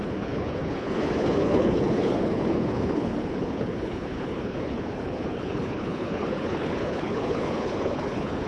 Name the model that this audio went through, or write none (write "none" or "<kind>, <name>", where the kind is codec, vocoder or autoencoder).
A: codec, HILCodec